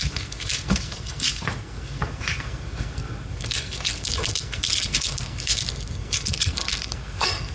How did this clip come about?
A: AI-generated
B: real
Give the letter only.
A